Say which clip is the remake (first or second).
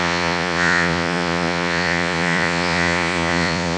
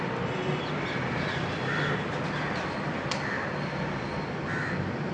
first